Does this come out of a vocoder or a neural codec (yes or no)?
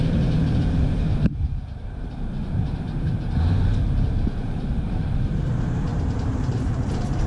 yes